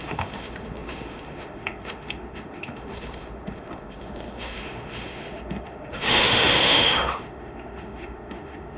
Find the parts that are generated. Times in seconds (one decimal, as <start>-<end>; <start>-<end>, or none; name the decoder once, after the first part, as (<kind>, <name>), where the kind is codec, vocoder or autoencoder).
0.0-8.8 (autoencoder, DAC-VAE)